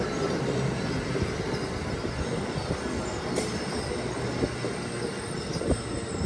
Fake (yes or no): no